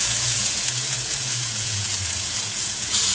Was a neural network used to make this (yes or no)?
yes